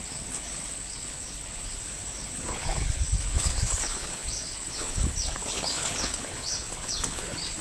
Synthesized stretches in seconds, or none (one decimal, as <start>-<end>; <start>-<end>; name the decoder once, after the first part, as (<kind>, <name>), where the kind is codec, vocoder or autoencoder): 0.0-7.6 (codec, HILCodec)